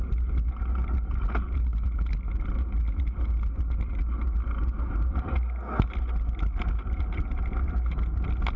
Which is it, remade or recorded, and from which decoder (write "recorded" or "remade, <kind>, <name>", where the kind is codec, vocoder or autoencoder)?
recorded